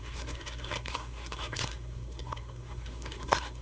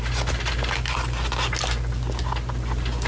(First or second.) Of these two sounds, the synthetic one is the first